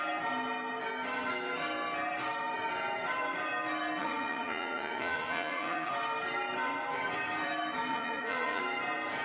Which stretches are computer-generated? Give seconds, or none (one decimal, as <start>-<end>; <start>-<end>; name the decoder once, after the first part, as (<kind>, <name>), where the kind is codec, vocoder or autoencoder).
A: 4.0-5.9 (vocoder, Vocos); 7.9-8.6